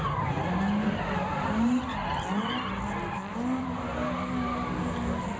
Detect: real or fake real